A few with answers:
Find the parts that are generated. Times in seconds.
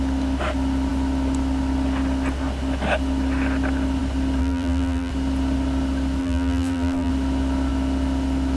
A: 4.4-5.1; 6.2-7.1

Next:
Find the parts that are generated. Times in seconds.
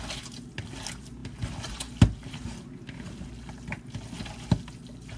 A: none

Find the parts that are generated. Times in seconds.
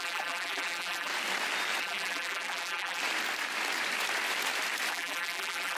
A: 0.0-1.1; 1.8-3.0; 4.9-5.8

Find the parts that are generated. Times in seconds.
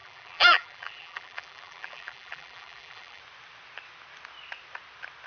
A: 0.0-3.2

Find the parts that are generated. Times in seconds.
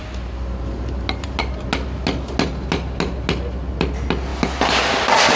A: none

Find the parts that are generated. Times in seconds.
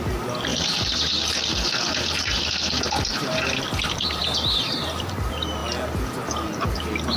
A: 3.1-4.2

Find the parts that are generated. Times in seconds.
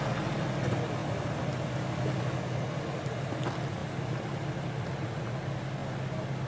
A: none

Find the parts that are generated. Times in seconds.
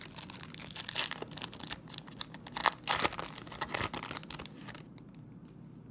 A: none